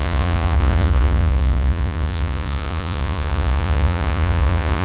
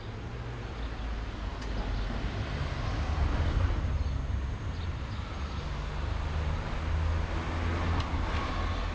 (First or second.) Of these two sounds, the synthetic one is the first